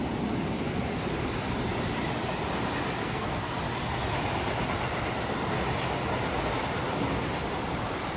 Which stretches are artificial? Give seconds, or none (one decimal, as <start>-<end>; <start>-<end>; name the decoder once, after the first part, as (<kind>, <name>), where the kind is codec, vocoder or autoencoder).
3.0-3.6 (codec, SNAC)